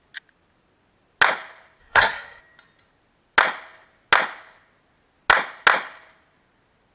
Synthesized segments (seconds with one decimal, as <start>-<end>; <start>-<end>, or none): 1.8-2.4